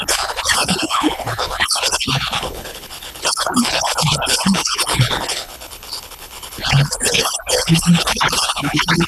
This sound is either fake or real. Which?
fake